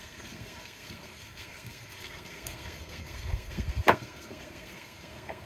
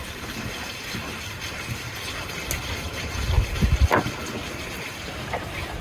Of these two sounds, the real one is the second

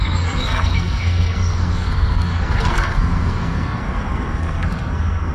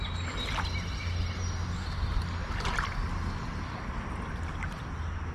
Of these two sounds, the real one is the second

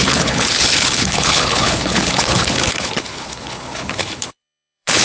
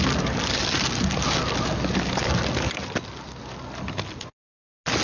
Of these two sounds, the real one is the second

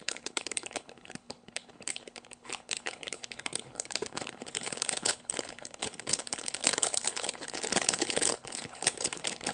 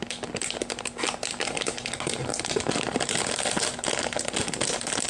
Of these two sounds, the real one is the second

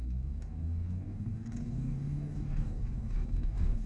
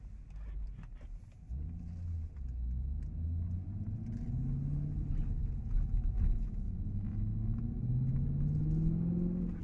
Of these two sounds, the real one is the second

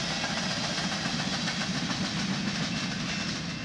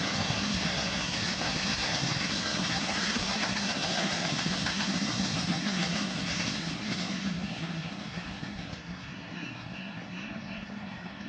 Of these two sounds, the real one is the first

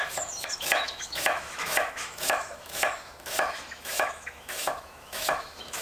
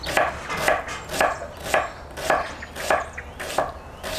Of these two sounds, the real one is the second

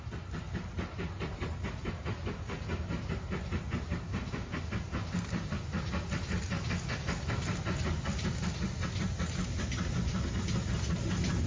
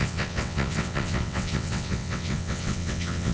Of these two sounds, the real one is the first